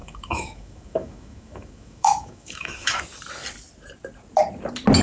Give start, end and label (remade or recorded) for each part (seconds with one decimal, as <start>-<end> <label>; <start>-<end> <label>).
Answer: 0.0-3.0 remade; 3.0-5.0 recorded